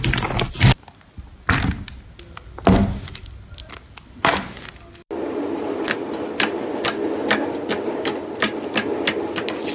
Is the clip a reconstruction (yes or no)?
no